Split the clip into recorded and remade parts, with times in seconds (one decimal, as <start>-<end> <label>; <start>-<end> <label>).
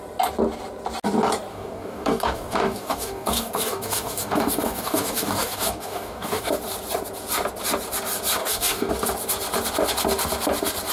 0.0-1.5 recorded; 1.5-6.5 remade; 6.5-8.4 recorded; 8.4-8.9 remade; 8.9-10.9 recorded